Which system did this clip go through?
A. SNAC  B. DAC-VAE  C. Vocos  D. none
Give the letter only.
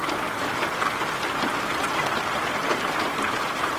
D